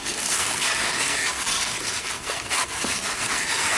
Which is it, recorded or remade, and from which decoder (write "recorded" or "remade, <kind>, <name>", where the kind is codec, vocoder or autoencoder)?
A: remade, codec, SNAC